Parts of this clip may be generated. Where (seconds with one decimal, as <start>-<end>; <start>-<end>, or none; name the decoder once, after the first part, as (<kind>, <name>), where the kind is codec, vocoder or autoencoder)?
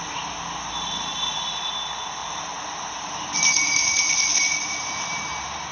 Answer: 2.2-5.7 (vocoder, BigVGAN v2)